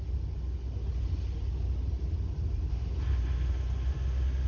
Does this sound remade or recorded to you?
recorded